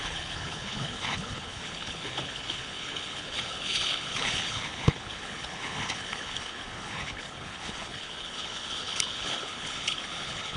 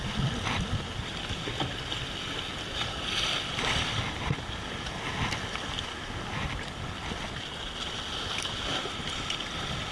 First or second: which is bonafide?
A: second